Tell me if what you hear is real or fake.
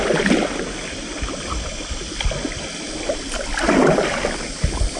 real